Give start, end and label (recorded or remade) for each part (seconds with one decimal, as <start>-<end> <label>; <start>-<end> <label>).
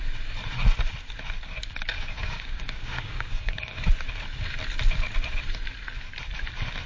0.0-1.9 recorded; 1.9-3.8 remade; 3.8-6.9 recorded